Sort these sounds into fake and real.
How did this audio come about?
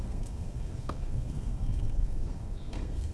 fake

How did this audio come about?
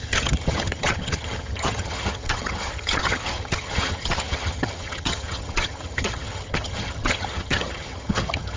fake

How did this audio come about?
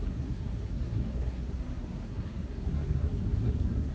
fake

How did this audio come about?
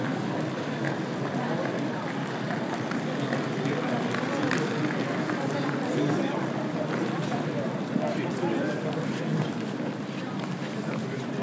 real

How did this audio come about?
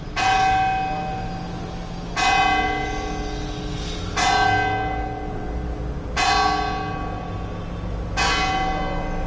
real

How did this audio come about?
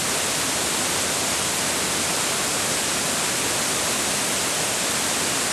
real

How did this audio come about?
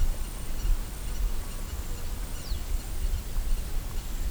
real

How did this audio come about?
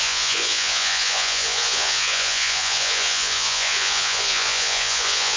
fake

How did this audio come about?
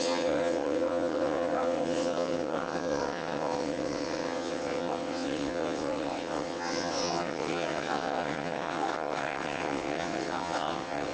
fake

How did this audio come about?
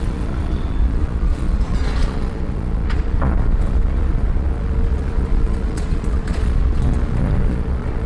fake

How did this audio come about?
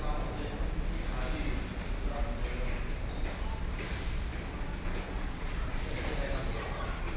real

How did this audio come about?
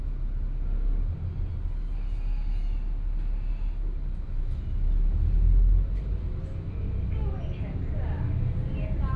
real